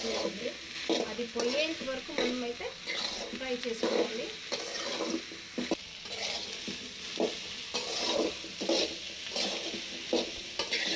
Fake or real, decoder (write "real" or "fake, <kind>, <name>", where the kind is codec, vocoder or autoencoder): real